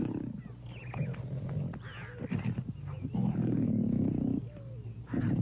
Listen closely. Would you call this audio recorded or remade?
recorded